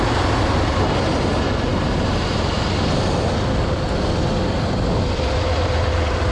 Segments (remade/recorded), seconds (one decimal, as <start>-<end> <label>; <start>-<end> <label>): 0.0-6.3 recorded